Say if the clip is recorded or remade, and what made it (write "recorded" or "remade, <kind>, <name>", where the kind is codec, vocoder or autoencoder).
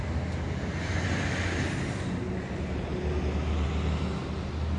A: recorded